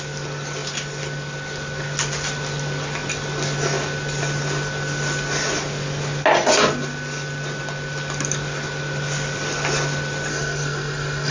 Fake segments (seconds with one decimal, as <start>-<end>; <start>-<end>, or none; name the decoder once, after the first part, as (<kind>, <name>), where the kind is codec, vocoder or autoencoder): 10.3-11.3 (codec, SNAC)